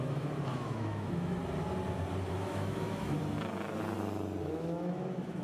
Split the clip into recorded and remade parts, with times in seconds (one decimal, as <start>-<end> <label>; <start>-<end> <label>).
0.0-1.4 remade; 1.4-2.3 recorded; 2.3-3.2 remade; 3.2-4.4 recorded; 4.4-5.4 remade